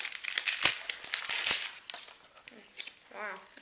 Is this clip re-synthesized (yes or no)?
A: no